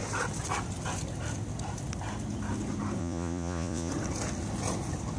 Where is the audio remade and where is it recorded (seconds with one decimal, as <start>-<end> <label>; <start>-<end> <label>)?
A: 0.0-3.0 recorded; 3.0-3.9 remade; 3.9-5.2 recorded